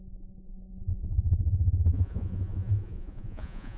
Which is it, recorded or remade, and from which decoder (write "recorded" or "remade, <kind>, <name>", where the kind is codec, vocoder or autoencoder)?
remade, vocoder, Vocos